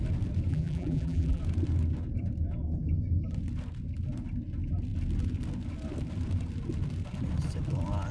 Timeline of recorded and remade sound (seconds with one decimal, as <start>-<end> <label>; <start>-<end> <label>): 0.0-0.5 recorded; 0.5-1.4 remade; 1.4-8.1 recorded